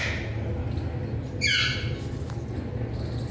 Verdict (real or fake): real